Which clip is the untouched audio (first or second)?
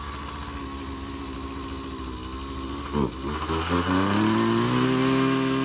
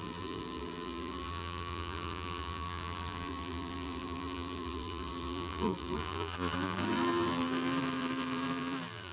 first